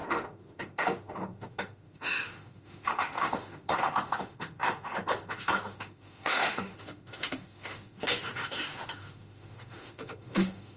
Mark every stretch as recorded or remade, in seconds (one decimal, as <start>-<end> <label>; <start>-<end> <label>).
0.0-10.8 remade